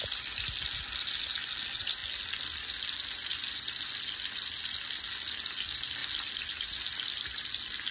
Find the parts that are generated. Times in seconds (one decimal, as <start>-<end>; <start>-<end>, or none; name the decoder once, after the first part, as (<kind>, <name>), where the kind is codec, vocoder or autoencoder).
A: none